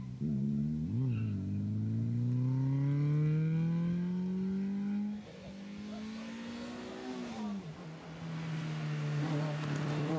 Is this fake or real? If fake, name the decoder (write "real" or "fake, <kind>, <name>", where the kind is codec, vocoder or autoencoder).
real